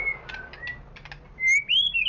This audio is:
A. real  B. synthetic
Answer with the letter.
A